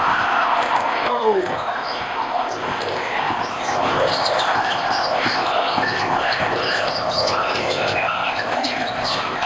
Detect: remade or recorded remade